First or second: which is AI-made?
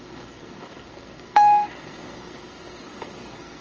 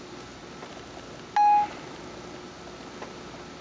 first